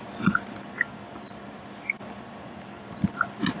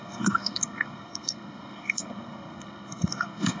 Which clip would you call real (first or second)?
first